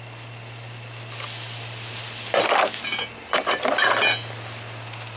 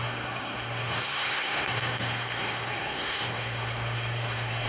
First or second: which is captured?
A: first